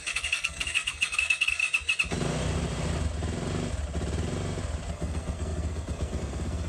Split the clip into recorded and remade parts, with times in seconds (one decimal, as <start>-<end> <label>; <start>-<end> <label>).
0.0-1.6 remade; 1.6-4.9 recorded; 4.9-6.7 remade